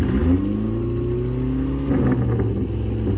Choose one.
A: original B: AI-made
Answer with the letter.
A